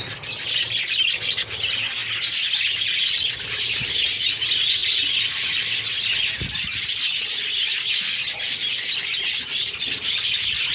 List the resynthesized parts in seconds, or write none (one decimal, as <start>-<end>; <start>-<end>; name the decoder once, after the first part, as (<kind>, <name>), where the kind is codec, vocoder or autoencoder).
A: 9.5-10.7 (vocoder, BigVGAN v2)